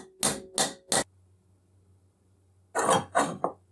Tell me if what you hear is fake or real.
real